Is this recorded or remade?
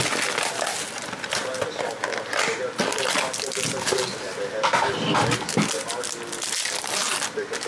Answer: recorded